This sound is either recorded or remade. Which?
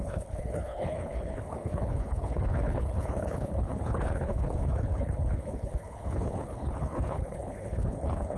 remade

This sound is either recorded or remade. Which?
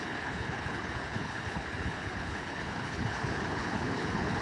remade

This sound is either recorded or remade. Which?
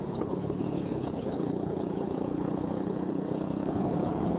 remade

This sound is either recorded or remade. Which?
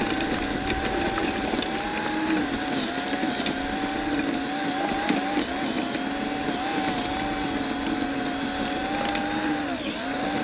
recorded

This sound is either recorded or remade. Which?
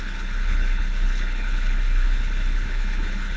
remade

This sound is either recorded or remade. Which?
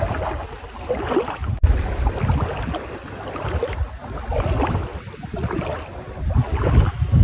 recorded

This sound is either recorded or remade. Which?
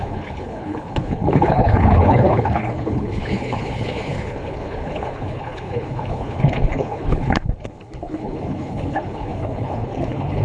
remade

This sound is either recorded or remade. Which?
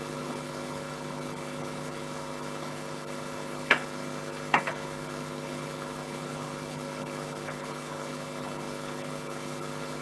remade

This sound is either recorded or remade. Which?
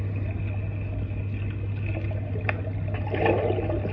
recorded